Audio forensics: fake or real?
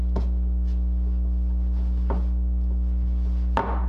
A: real